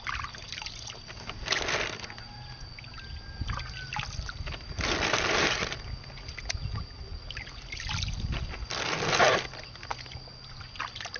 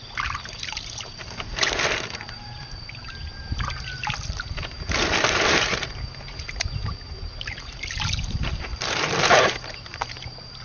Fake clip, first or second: second